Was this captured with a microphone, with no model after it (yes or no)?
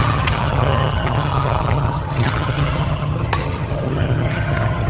no